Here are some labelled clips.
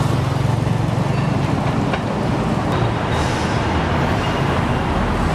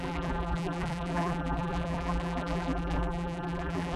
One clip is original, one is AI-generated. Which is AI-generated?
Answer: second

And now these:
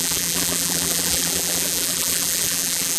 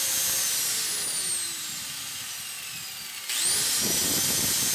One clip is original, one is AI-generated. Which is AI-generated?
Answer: first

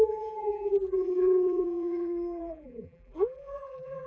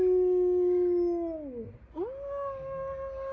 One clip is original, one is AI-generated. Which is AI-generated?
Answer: first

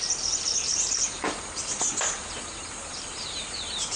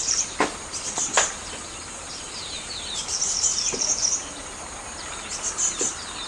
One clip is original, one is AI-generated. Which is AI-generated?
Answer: second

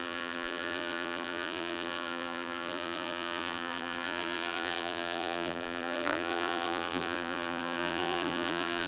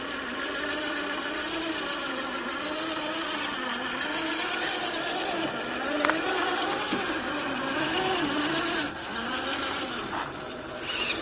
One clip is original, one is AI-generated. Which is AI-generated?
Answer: first